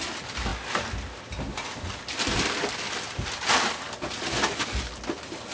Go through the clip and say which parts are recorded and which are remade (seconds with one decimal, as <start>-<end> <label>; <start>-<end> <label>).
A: 0.0-5.5 recorded